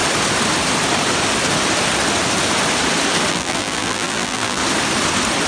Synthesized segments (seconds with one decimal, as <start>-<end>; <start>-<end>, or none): 3.3-4.6